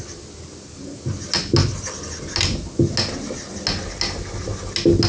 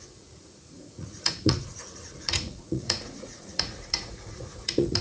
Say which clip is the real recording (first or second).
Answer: first